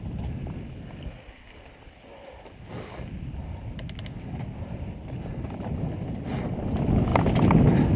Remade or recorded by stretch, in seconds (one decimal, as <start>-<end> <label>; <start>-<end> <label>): 0.0-8.0 recorded